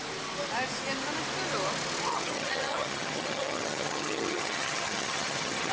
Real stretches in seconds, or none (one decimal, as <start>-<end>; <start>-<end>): 0.0-2.1